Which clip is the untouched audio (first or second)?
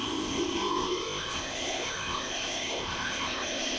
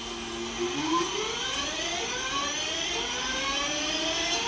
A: second